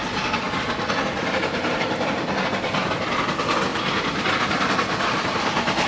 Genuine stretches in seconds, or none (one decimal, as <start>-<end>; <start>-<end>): 0.0-5.9